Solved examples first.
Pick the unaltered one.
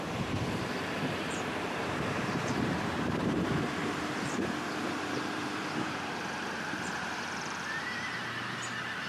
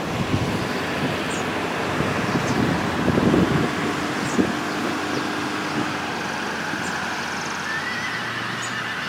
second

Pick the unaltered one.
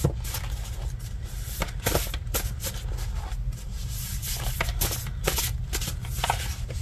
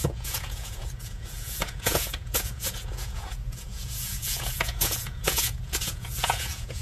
first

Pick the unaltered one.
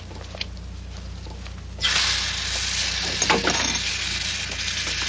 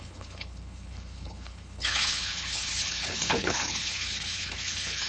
first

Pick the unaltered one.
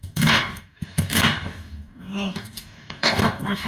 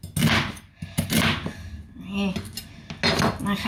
second